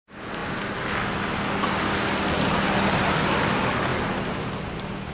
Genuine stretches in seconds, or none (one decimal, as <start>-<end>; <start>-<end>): 0.0-5.1